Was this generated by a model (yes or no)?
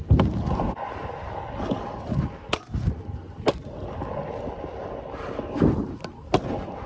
no